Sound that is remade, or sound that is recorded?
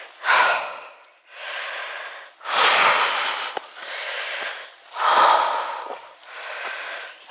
recorded